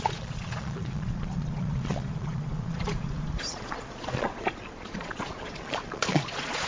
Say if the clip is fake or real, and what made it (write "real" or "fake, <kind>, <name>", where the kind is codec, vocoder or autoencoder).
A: fake, vocoder, Vocos